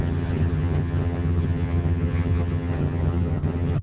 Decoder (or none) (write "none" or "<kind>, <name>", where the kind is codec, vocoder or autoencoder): vocoder, HiFi-GAN